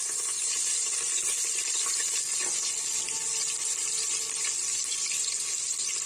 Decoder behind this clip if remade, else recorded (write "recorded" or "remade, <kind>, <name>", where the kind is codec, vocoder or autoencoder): recorded